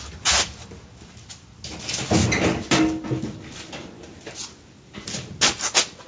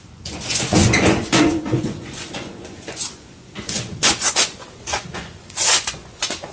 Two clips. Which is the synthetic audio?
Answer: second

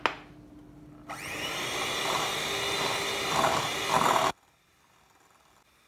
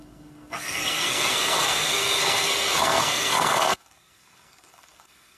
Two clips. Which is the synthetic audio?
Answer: second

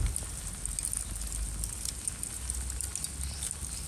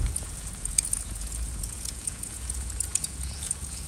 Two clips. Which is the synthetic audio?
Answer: second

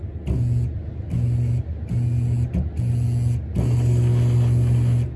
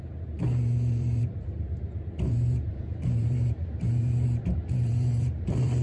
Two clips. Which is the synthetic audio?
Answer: second